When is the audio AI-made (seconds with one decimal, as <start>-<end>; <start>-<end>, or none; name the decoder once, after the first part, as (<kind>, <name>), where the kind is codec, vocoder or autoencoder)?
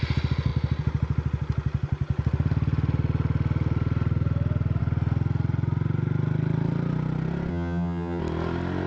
7.5-8.2 (vocoder, HiFi-GAN)